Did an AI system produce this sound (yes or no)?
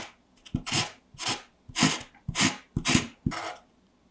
no